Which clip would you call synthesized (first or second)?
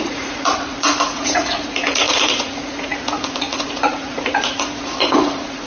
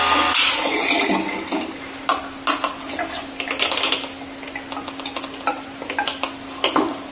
first